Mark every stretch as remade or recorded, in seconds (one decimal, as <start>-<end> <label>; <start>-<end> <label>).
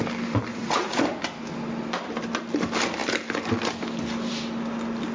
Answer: 0.0-0.5 recorded; 0.5-1.0 remade; 1.0-5.1 recorded